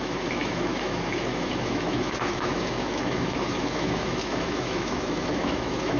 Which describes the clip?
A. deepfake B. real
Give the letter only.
A